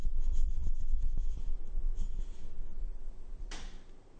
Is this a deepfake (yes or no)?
no